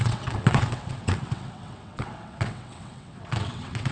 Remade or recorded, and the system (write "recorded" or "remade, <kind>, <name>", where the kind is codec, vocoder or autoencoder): remade, vocoder, WaveNeXt